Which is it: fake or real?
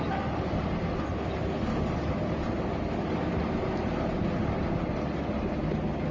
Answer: real